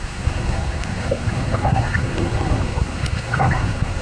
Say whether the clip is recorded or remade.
remade